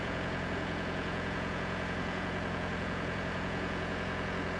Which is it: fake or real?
fake